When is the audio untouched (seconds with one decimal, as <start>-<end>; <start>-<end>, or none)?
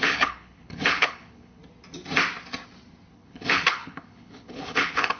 1.6-3.1